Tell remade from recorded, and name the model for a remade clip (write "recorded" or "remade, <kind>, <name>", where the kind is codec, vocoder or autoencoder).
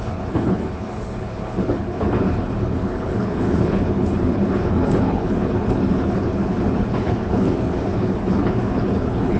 remade, codec, HILCodec